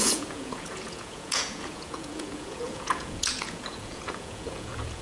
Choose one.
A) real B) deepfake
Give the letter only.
B